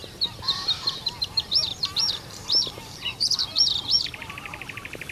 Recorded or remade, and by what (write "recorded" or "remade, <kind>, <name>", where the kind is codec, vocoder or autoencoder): remade, vocoder, BigVGAN v2